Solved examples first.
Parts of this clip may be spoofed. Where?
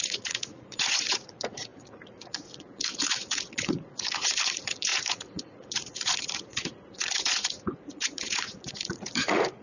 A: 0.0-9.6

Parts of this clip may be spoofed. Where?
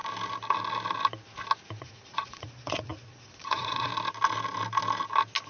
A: 1.8-3.9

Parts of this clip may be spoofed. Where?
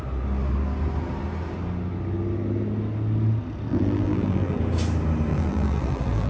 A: 3.7-4.6; 5.3-6.3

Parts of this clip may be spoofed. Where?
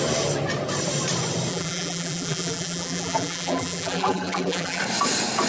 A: 1.5-4.8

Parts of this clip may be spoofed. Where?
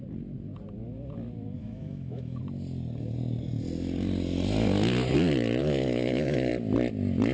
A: 1.6-2.4; 5.6-6.5